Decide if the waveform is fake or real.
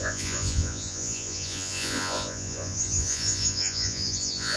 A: fake